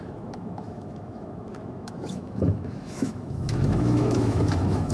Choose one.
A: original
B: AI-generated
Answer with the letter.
B